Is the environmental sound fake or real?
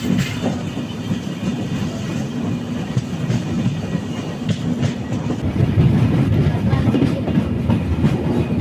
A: real